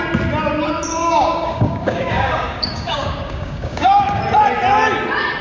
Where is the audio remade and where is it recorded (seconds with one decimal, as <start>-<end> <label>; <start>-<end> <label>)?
0.0-1.0 recorded; 1.0-4.2 remade; 4.2-5.4 recorded